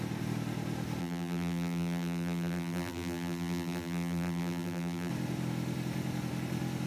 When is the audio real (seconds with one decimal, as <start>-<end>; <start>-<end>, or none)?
0.0-1.0; 5.1-6.9